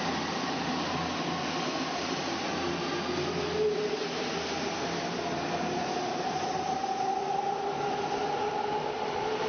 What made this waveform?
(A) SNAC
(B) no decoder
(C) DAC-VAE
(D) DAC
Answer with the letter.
B